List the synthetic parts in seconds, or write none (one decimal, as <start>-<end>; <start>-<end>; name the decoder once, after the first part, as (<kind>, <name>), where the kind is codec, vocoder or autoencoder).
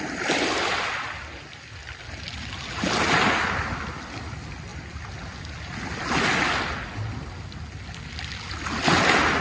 none